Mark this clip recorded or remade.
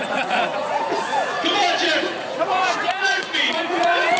remade